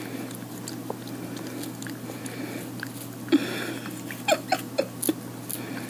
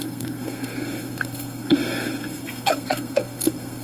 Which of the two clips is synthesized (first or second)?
second